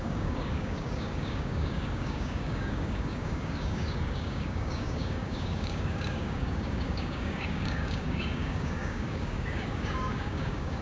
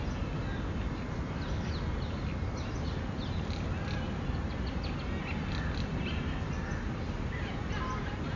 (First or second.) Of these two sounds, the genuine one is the second